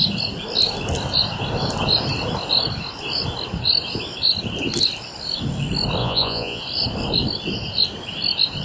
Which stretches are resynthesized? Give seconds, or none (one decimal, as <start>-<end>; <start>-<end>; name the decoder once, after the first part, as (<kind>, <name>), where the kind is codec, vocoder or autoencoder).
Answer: 6.0-6.6 (vocoder, Vocos)